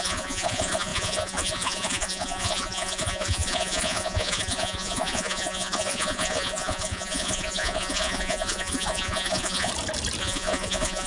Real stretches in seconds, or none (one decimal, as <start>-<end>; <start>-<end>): 9.7-10.2